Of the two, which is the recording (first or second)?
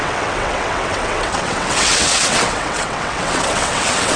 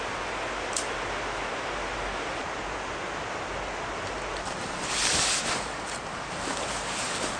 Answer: second